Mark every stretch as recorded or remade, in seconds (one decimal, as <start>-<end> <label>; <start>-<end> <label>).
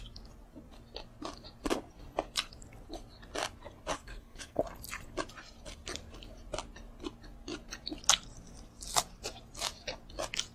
0.0-3.9 recorded; 3.9-4.6 remade; 4.6-10.5 recorded